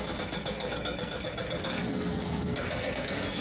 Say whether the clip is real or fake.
fake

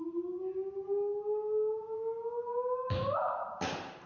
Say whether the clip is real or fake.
real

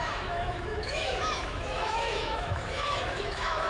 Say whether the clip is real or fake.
fake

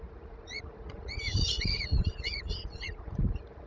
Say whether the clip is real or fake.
fake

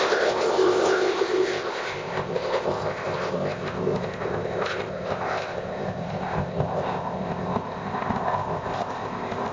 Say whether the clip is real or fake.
fake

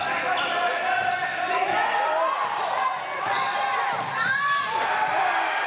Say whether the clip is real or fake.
real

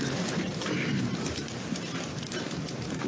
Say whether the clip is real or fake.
fake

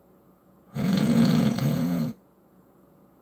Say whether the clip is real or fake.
fake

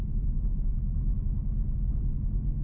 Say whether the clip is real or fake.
real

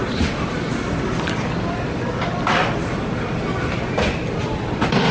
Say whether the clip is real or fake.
real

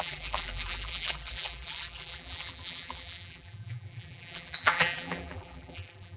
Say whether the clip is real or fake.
fake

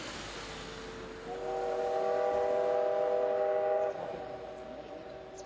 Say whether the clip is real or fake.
real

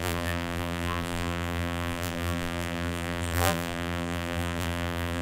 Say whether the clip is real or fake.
fake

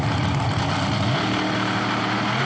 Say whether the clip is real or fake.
real